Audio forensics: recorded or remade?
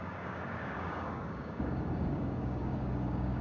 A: remade